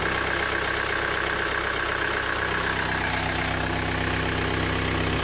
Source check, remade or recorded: recorded